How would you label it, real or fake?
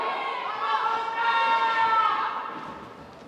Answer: real